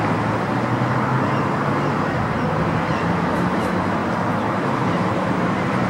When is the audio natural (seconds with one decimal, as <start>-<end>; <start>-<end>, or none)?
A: 0.5-2.9; 4.0-4.5